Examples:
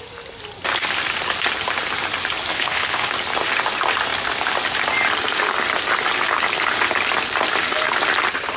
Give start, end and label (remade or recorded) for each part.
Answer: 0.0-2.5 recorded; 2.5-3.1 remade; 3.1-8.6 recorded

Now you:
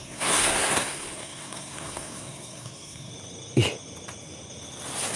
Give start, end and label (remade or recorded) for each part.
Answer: 0.0-3.1 remade; 3.1-5.2 recorded

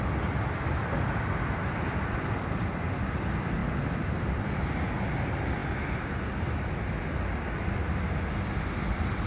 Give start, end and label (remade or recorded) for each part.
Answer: 0.0-9.3 recorded

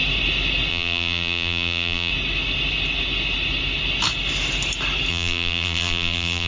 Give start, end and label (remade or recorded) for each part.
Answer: 0.0-0.7 recorded; 0.7-2.1 remade; 2.1-5.1 recorded; 5.1-6.5 remade

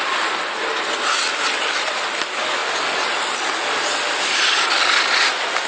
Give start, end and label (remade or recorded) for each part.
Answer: 0.0-5.7 recorded